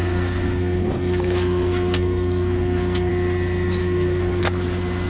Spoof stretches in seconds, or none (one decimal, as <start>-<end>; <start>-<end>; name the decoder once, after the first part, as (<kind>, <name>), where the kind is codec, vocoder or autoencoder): 0.0-3.1 (codec, SNAC); 3.8-4.4